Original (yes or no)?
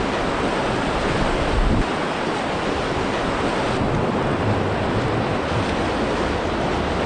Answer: yes